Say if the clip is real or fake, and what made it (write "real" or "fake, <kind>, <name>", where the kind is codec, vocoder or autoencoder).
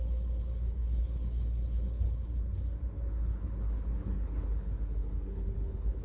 fake, codec, HILCodec